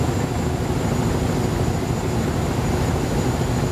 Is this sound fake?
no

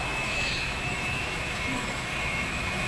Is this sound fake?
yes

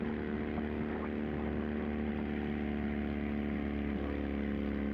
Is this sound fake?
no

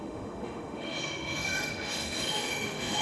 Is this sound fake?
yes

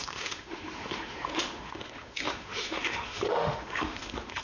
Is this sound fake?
yes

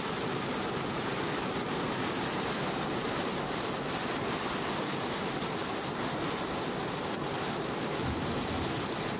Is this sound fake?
no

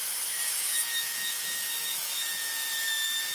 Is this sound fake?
yes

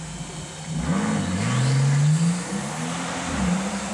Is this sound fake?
no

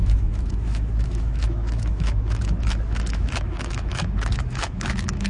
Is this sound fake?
yes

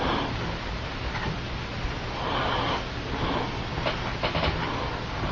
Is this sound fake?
no